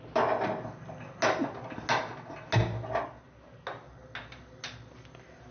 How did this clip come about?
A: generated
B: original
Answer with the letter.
B